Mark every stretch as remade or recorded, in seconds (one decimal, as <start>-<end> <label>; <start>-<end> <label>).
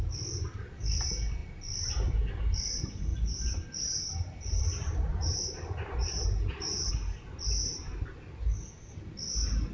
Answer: 0.0-3.1 recorded; 3.1-6.9 remade; 6.9-9.7 recorded